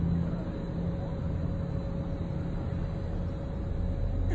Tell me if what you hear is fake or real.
real